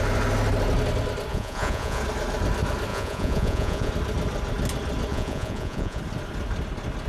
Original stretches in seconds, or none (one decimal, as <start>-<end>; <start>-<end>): 0.0-1.3; 2.0-2.9; 3.9-5.1; 6.0-7.1